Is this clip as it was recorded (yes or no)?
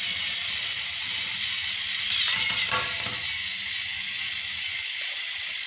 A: yes